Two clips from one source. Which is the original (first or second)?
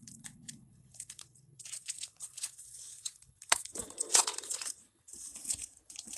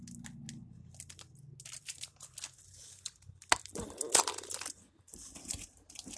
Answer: second